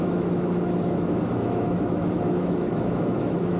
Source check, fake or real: fake